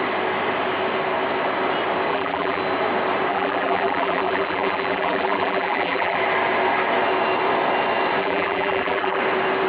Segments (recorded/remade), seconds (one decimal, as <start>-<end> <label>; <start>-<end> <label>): 0.0-2.1 recorded; 2.1-2.6 remade; 2.6-3.3 recorded; 3.3-6.2 remade; 6.2-8.2 recorded; 8.2-9.2 remade; 9.2-9.7 recorded